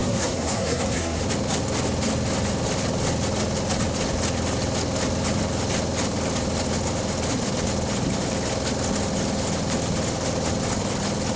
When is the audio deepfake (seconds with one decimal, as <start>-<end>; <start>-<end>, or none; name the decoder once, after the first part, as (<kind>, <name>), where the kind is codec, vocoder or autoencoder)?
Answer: 0.0-1.2 (codec, SNAC)